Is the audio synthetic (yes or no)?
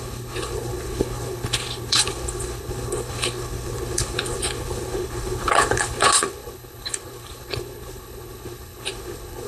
yes